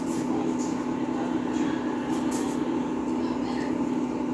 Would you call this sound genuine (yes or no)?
yes